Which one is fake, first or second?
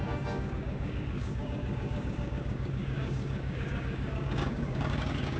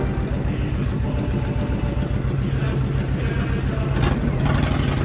first